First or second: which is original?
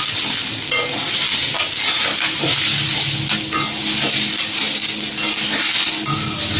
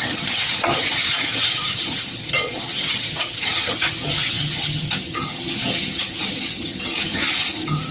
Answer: first